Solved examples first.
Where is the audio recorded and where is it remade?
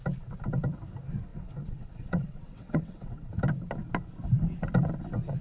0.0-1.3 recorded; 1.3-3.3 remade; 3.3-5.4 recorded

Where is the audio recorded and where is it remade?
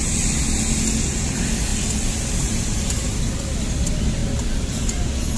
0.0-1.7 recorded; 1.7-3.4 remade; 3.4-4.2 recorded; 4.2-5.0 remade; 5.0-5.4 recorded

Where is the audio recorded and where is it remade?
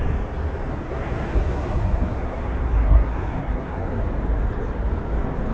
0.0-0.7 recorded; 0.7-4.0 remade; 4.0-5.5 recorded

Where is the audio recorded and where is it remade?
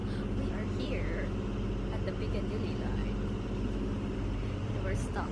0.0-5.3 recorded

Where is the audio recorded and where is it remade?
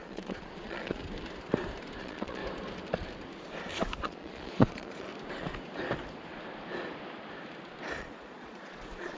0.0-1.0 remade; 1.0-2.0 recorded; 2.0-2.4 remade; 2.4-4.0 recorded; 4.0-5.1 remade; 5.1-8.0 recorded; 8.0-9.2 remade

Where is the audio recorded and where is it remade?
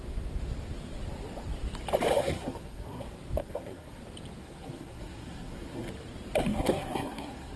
0.0-2.2 recorded; 2.2-3.0 remade; 3.0-3.4 recorded; 3.4-4.0 remade; 4.0-4.4 recorded; 4.4-5.9 remade; 5.9-6.5 recorded; 6.5-7.6 remade